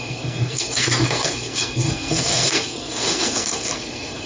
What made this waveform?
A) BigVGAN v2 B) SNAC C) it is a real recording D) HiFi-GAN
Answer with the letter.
B